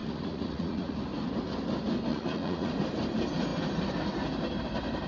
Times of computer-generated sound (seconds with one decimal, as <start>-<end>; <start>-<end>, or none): 0.0-1.0; 2.1-2.7